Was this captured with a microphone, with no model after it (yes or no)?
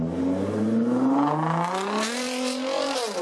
yes